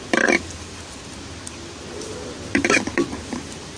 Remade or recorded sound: recorded